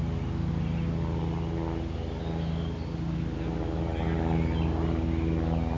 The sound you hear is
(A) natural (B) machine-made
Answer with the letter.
A